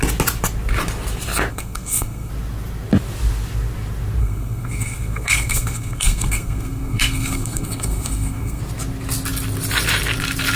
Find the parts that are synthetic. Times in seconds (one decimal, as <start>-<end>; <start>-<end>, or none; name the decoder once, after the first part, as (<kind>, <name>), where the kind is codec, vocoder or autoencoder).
1.5-2.3 (codec, SNAC); 4.2-8.6

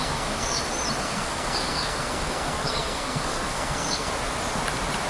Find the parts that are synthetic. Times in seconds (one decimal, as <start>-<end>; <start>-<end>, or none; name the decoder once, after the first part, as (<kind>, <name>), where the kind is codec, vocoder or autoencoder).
0.0-0.6 (codec, SNAC); 1.0-4.1